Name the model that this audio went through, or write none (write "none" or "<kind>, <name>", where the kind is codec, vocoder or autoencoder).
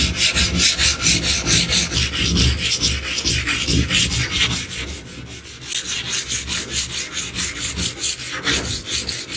none